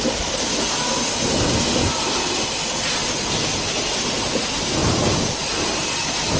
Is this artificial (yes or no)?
no